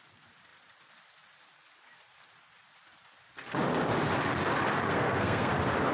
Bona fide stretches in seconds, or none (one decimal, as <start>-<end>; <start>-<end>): 0.0-4.9; 5.5-5.9